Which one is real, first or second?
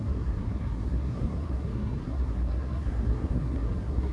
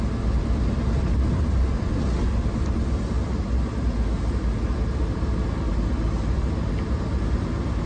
second